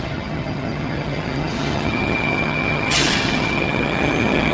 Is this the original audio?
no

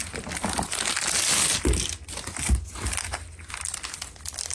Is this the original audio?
yes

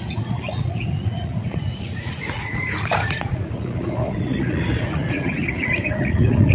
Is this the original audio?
no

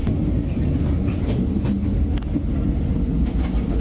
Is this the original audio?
yes